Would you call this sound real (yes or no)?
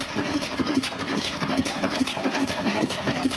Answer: no